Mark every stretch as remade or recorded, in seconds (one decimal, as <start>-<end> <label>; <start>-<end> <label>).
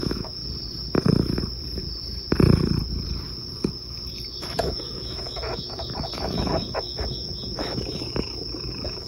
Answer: 0.0-0.4 remade; 0.4-4.4 recorded; 4.4-9.1 remade